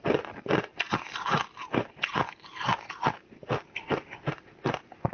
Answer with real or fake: real